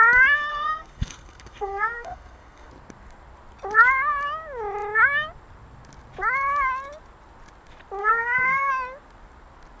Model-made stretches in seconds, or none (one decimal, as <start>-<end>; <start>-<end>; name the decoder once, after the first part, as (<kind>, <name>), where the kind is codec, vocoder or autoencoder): 0.5-2.7 (codec, SNAC); 8.0-8.7